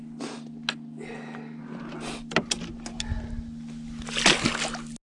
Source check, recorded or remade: recorded